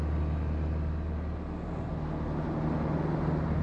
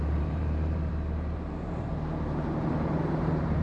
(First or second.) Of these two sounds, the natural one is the first